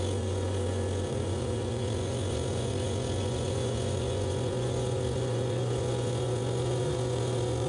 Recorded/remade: remade